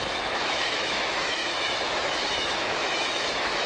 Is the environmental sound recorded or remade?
remade